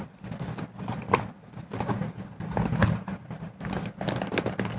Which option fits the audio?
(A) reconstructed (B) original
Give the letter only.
B